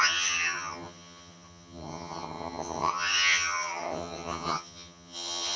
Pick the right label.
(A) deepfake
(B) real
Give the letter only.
A